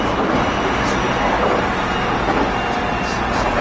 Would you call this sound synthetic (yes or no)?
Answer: no